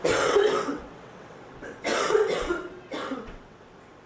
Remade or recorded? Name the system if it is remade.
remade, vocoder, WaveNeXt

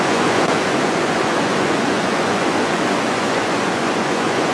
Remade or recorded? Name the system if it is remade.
remade, vocoder, Vocos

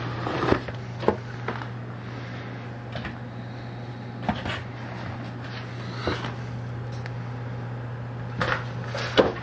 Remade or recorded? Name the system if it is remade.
recorded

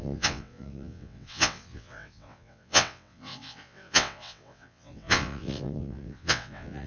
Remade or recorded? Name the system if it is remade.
remade, vocoder, WaveNeXt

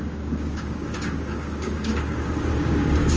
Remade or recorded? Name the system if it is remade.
remade, codec, DAC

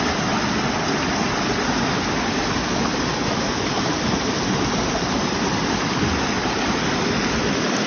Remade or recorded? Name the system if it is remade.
recorded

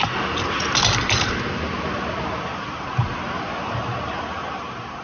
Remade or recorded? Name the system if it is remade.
recorded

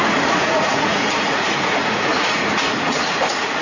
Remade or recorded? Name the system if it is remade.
remade, vocoder, Vocos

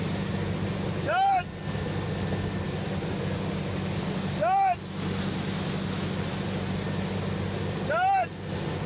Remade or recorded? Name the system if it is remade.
recorded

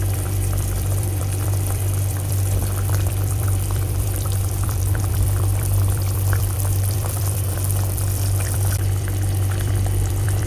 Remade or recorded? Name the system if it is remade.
remade, vocoder, BigVGAN v2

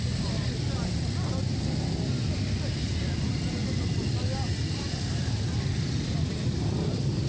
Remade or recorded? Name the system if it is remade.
recorded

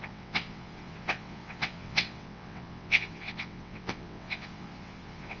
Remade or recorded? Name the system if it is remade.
remade, vocoder, WaveNeXt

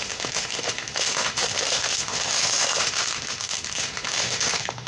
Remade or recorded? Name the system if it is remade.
remade, autoencoder, DAC-VAE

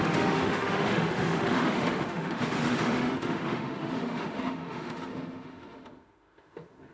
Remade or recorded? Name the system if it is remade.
remade, autoencoder, DAC-VAE